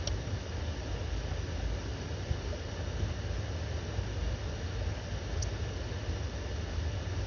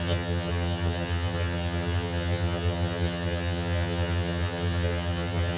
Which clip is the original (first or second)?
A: first